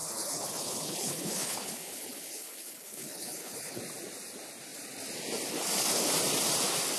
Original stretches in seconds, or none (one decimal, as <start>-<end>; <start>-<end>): 3.8-7.0

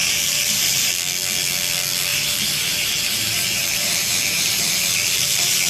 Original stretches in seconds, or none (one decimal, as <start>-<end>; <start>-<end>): 0.9-2.1

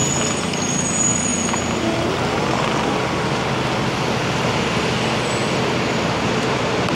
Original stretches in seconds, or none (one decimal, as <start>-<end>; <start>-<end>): 0.0-6.9